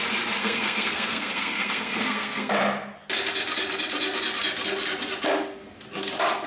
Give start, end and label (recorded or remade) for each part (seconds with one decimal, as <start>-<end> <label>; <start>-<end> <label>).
0.0-0.4 recorded; 0.4-2.5 remade; 2.5-6.5 recorded